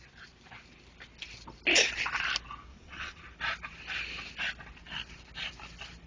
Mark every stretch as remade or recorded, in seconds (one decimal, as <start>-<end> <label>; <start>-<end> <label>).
0.0-2.7 recorded; 2.7-3.2 remade; 3.2-6.1 recorded